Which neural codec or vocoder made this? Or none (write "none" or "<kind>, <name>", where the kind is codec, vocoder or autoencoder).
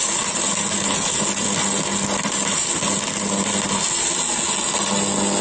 none